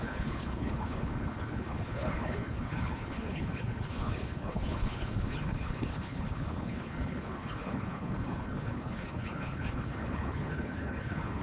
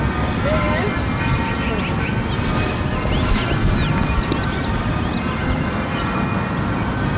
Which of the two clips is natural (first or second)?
second